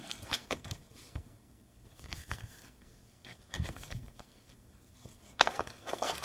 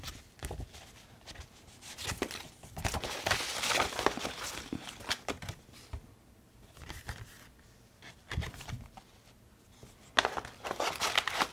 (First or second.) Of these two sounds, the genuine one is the second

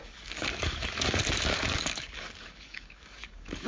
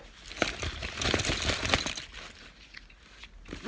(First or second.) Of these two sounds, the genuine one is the second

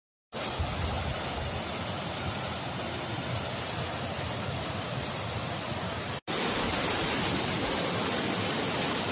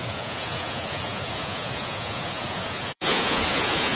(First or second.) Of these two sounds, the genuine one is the first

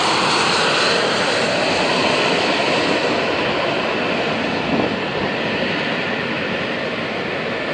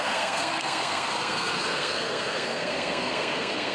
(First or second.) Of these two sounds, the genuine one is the first